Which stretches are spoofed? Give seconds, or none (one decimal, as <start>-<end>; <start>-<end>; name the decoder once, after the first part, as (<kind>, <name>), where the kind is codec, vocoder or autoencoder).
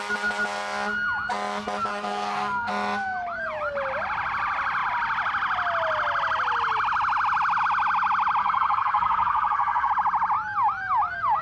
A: 1.9-2.7 (codec, SNAC); 8.4-9.9